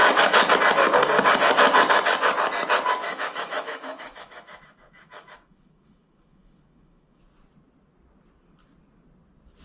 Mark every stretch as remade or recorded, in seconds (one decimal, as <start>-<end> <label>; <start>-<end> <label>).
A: 0.0-0.5 remade; 0.5-3.0 recorded; 3.0-7.2 remade; 7.2-9.6 recorded